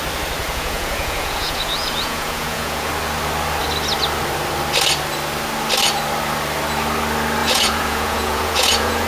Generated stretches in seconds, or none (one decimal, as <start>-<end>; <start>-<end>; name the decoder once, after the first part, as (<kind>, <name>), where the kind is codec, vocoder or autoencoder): 0.4-2.9 (vocoder, Vocos); 7.4-9.1